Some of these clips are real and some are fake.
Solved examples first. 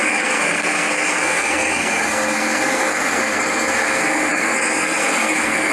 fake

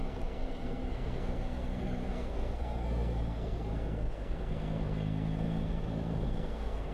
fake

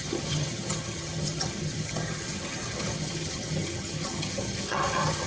fake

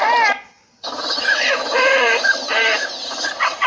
fake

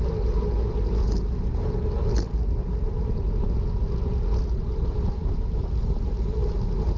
real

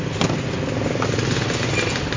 real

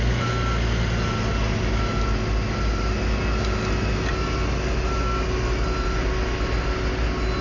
real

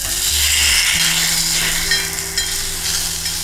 real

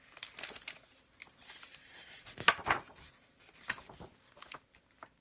real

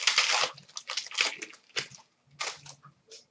real